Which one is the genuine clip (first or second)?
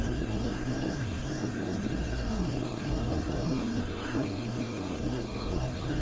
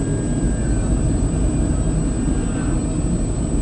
second